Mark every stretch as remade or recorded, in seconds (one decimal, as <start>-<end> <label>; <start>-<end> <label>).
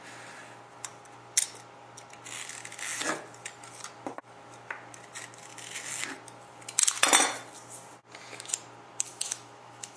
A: 0.0-9.1 recorded; 9.1-10.0 remade